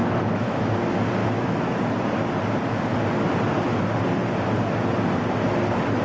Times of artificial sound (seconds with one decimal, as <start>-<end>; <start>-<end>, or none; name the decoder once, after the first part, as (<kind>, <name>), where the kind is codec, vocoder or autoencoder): 0.0-0.6 (autoencoder, DAC-VAE); 1.2-1.8